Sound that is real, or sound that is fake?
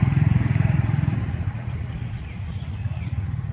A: fake